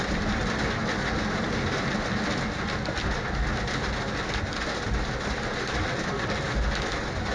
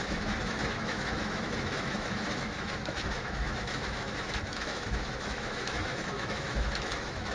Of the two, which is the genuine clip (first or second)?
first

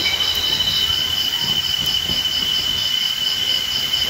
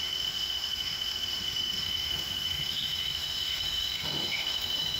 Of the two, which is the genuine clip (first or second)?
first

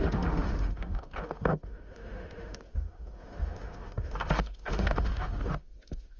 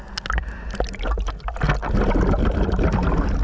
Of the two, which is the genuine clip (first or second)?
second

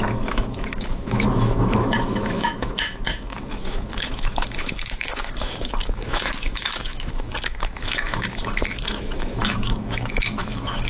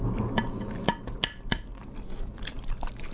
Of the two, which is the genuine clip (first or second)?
second